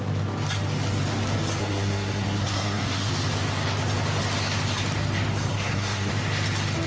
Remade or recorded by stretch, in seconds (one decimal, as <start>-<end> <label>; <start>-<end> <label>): 0.0-1.6 recorded; 1.6-3.1 remade; 3.1-5.5 recorded; 5.5-6.1 remade; 6.1-6.9 recorded